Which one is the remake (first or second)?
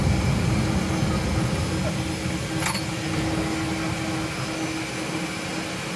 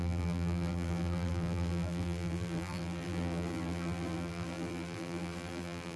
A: second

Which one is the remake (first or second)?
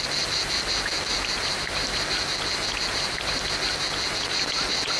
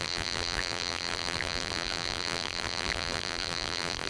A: second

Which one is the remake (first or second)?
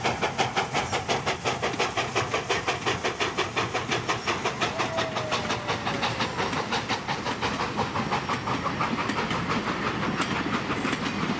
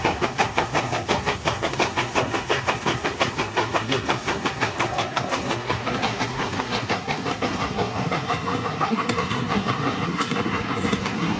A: second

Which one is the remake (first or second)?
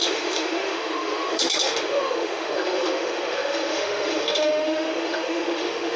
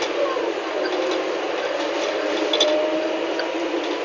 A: first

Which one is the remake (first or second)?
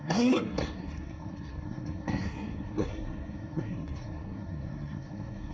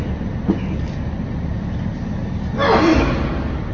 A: first